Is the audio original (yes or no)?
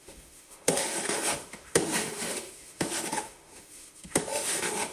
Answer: no